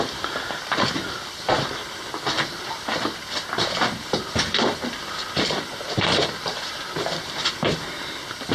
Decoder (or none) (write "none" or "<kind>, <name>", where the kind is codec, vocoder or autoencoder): vocoder, BigVGAN v2